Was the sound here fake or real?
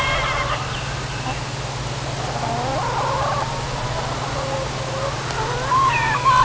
real